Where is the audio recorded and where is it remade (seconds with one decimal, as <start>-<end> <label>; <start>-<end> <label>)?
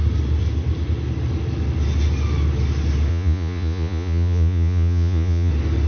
0.0-3.1 recorded; 3.1-5.5 remade; 5.5-5.9 recorded